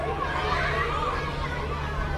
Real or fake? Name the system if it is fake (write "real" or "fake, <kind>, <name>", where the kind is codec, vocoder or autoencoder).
real